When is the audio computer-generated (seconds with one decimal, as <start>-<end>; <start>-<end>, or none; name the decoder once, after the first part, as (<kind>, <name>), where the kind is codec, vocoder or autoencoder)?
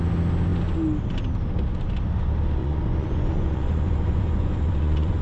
2.6-5.2 (vocoder, Vocos)